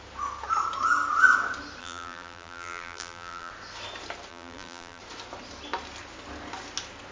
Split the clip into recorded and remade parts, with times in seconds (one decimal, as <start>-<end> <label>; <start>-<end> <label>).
0.0-1.8 recorded; 1.8-3.5 remade; 3.5-4.3 recorded; 4.3-5.0 remade; 5.0-7.1 recorded